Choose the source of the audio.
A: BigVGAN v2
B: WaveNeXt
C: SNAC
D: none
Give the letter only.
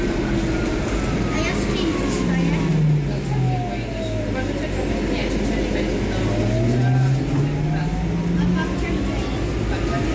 D